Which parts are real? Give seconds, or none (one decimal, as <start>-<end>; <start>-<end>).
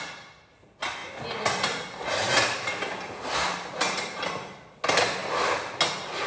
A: 0.0-6.3